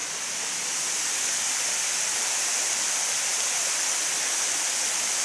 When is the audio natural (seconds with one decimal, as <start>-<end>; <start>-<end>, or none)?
0.0-5.2